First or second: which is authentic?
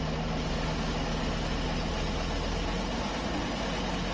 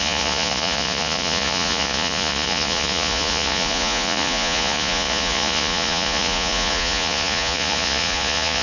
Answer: first